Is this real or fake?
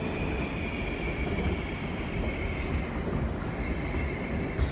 real